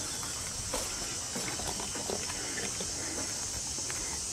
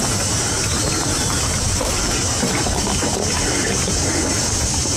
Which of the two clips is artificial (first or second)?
second